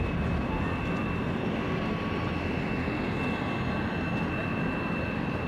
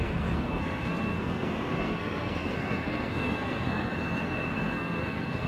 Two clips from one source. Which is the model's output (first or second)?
second